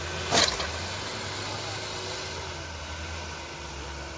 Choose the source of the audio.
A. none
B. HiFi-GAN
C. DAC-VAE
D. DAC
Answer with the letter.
A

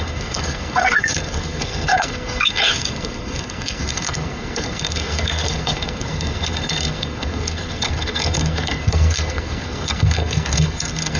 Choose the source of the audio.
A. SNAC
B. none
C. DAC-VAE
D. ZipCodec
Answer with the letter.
A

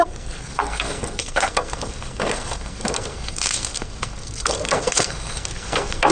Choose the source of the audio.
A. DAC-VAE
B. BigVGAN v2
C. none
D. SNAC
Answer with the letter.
D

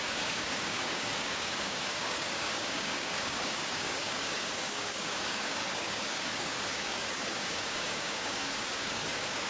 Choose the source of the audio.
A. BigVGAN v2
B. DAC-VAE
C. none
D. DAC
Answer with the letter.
D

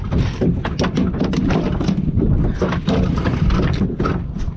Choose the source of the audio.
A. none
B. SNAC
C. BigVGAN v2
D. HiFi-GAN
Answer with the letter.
A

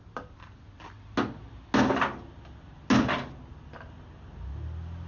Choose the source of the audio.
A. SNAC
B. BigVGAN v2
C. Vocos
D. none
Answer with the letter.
D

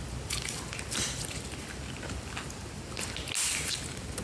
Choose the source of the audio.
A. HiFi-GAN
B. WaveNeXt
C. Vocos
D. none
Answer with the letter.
D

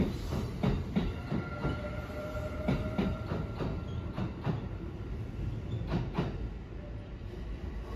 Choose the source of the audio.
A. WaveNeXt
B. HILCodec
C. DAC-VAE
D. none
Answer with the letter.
D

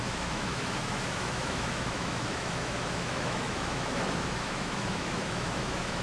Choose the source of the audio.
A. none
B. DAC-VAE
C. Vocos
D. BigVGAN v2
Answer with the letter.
B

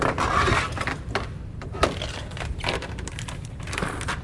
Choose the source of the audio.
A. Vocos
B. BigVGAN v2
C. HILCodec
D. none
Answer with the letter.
D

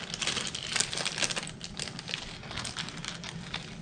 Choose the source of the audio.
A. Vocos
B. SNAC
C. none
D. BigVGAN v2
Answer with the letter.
C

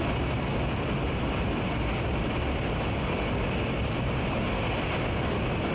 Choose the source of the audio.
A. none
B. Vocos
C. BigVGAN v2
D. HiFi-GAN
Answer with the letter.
A